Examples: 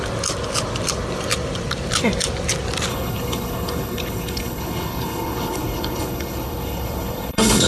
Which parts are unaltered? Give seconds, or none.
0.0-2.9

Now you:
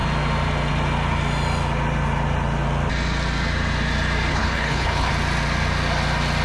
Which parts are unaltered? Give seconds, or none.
0.0-4.3; 5.1-6.4

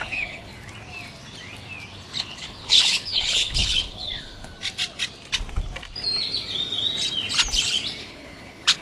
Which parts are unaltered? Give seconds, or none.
0.5-2.2; 4.5-8.0

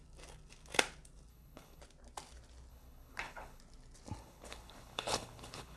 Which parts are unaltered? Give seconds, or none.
0.0-1.3; 1.8-2.7; 3.6-4.2